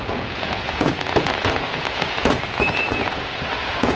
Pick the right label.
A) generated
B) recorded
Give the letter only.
A